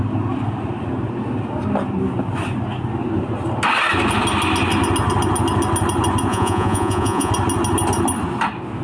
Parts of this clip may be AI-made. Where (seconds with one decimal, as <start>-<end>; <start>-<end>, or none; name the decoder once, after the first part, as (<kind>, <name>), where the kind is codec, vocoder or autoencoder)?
6.3-7.3 (vocoder, Vocos)